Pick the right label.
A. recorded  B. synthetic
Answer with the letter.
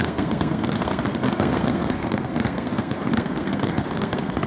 B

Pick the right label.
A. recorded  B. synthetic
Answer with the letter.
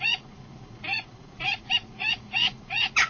B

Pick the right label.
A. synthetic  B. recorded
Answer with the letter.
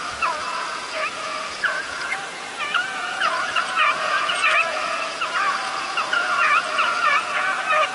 A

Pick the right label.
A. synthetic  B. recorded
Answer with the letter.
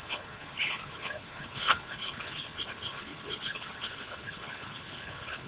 A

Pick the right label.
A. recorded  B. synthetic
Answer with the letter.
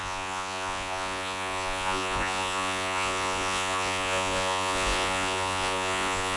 B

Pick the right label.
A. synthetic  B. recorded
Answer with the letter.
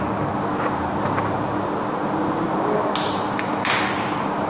B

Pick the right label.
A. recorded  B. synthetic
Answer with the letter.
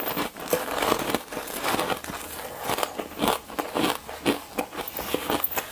A